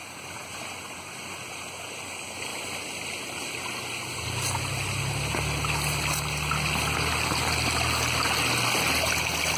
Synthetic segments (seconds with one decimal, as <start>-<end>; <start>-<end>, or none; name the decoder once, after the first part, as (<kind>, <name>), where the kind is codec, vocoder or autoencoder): none